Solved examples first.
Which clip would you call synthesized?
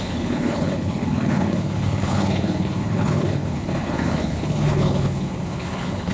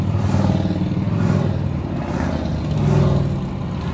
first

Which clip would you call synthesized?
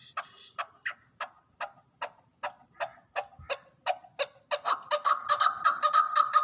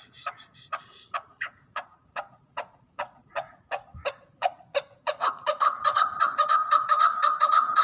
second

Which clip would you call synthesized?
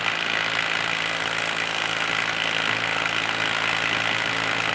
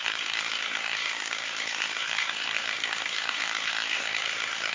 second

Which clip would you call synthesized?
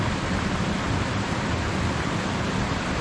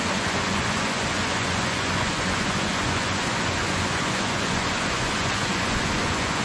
second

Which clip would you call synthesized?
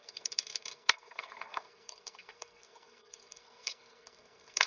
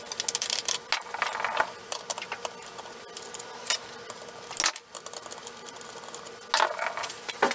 first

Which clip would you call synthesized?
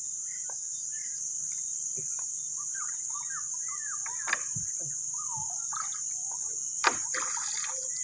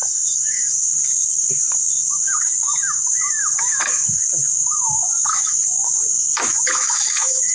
second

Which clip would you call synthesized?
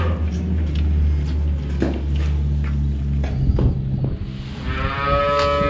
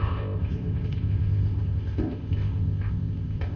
second